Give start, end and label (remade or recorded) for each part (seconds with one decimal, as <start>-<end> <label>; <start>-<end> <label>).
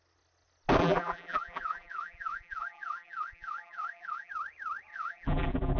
0.0-0.8 recorded; 0.8-4.3 remade; 4.3-4.9 recorded; 4.9-5.8 remade